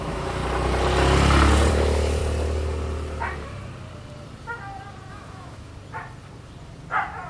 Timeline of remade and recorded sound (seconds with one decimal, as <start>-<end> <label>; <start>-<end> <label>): 0.0-0.4 remade; 0.4-1.7 recorded; 1.7-2.2 remade; 2.2-5.1 recorded; 5.1-5.7 remade; 5.7-7.3 recorded